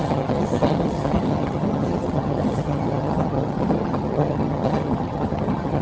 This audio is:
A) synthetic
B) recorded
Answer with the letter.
A